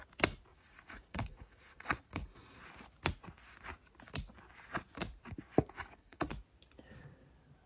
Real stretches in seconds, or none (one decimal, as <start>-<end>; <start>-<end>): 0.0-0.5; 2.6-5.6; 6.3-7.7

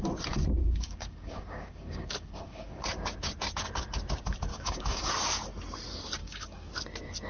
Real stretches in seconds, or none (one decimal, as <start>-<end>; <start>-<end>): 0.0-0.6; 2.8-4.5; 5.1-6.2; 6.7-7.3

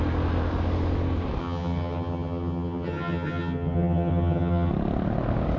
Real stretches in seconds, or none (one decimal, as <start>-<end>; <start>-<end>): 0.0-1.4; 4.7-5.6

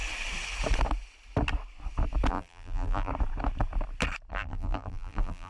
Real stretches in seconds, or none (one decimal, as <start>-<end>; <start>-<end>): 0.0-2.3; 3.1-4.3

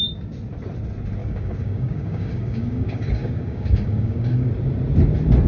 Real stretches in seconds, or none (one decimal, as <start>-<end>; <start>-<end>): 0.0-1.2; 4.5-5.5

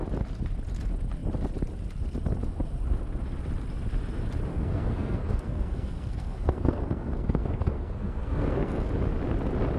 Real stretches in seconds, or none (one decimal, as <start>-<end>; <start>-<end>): 0.0-4.5; 8.9-9.8

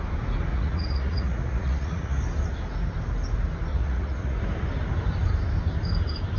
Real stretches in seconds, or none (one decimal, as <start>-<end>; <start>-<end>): 0.0-0.5; 2.2-3.7; 4.4-6.4